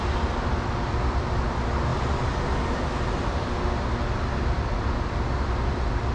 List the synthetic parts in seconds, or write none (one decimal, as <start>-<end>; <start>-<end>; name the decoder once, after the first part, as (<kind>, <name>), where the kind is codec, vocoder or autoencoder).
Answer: none